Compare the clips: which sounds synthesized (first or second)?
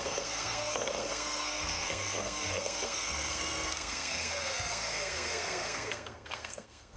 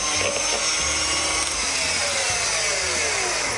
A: first